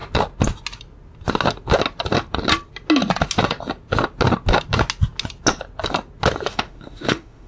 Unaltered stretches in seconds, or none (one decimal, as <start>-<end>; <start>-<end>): 0.0-6.5